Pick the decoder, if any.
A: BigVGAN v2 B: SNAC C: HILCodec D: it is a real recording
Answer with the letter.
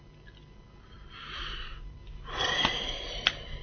D